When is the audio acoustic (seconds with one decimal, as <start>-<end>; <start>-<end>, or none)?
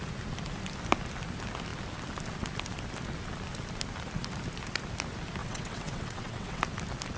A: 0.0-5.4; 6.6-7.2